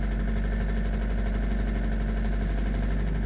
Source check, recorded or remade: recorded